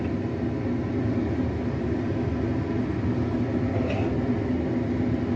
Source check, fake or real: real